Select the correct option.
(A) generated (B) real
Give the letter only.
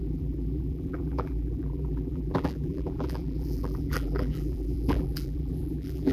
A